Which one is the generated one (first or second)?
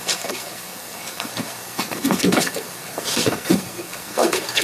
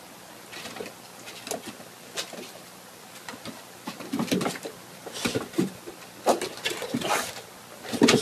first